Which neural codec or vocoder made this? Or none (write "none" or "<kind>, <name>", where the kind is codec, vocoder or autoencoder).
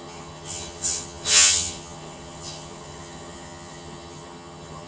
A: vocoder, HiFi-GAN